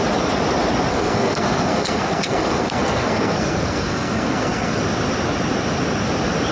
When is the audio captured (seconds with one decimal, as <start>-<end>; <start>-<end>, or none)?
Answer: 0.0-0.9; 4.8-6.5